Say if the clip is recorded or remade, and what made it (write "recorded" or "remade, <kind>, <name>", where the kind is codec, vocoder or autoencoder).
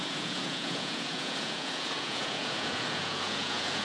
remade, vocoder, Vocos